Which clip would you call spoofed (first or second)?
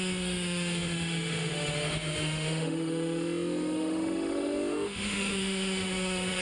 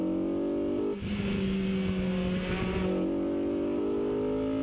first